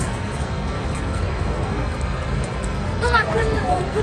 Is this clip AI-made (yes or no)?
yes